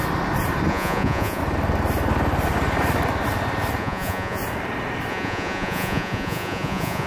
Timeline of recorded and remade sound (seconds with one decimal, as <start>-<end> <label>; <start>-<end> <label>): 0.0-0.7 recorded; 0.7-1.4 remade; 1.4-3.8 recorded; 3.8-4.4 remade; 4.4-5.1 recorded; 5.1-7.1 remade